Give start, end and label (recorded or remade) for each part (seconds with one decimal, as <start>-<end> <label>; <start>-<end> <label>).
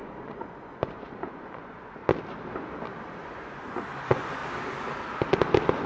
0.0-2.0 remade; 2.0-3.1 recorded; 3.1-4.4 remade; 4.4-5.9 recorded